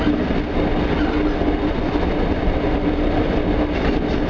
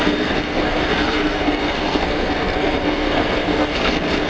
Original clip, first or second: first